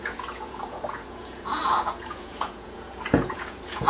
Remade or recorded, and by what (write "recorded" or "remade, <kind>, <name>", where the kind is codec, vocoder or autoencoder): remade, vocoder, Vocos